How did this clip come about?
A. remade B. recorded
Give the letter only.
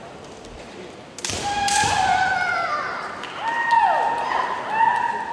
B